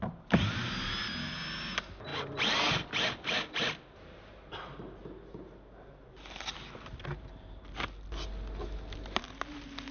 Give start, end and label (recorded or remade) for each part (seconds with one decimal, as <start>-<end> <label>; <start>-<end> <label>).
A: 0.0-9.9 recorded